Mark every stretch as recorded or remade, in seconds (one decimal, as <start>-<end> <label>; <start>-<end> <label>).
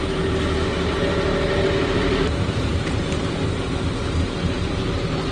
0.0-5.3 recorded